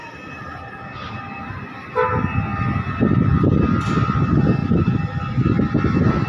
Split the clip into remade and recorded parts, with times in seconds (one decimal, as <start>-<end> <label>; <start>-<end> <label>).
0.0-6.3 recorded